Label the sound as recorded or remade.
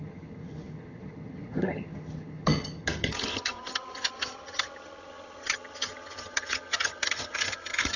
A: remade